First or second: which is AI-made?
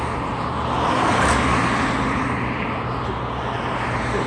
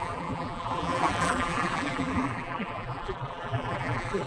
second